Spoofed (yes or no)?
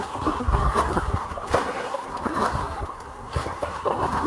yes